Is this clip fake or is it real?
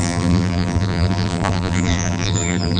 fake